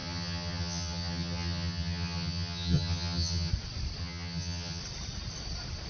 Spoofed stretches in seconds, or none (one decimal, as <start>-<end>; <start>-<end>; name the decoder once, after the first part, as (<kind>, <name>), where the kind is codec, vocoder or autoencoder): 0.0-3.5 (vocoder, HiFi-GAN); 4.0-4.8